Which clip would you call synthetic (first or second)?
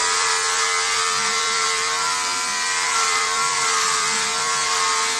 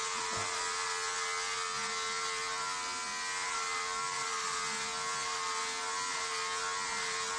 first